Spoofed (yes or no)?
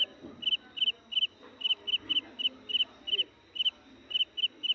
no